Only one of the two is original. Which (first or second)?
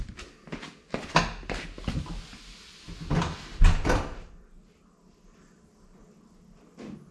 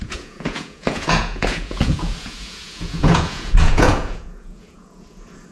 first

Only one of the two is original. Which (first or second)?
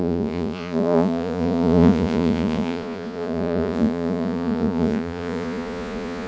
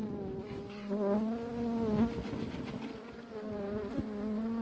second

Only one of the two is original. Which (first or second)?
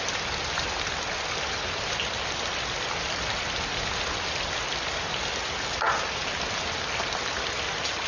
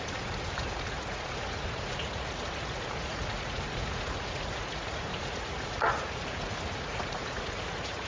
first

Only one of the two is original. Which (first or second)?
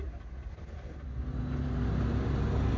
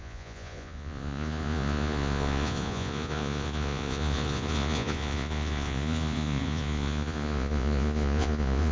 first